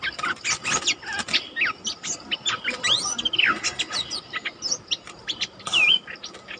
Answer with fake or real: real